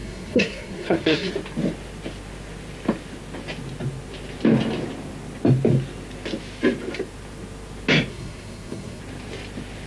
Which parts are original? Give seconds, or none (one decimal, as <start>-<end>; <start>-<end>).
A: 1.3-8.1; 9.0-9.9